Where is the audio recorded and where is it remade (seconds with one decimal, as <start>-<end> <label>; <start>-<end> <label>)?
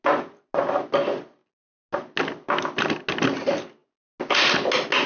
0.0-5.1 recorded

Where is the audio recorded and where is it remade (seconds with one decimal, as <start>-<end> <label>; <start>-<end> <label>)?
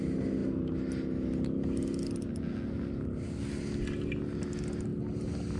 0.0-5.6 recorded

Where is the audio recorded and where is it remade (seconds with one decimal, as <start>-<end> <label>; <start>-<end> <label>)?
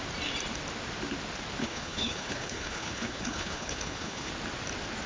0.0-1.6 recorded; 1.6-4.3 remade; 4.3-5.1 recorded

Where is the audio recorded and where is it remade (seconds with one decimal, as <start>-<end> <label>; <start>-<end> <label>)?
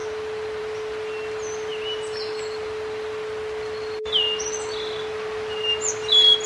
0.0-6.5 recorded